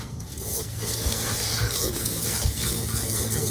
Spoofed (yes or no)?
yes